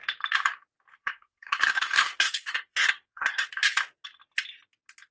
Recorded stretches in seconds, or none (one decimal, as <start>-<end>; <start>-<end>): 0.0-0.9; 3.5-5.1

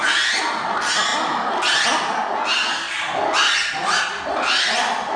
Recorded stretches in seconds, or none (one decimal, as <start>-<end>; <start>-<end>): 0.0-5.2